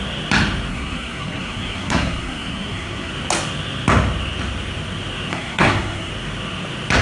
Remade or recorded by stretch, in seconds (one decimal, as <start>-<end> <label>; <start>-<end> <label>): 0.0-0.7 recorded; 0.7-3.1 remade; 3.1-5.3 recorded; 5.3-6.1 remade; 6.1-7.0 recorded